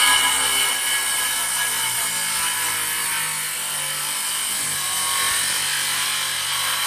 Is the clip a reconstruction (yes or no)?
no